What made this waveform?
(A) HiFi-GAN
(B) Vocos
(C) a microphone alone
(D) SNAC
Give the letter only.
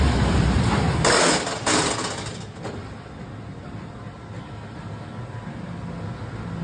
C